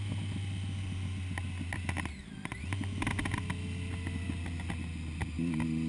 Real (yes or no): yes